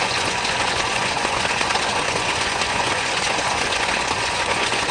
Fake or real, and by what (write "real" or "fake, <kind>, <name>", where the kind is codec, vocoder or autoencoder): fake, vocoder, Vocos